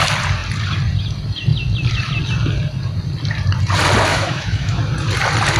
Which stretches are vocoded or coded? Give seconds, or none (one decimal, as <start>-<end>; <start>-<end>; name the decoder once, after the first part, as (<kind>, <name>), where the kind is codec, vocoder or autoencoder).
4.1-4.8 (autoencoder, DAC-VAE)